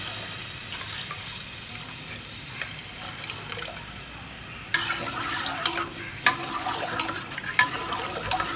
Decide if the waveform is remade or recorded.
recorded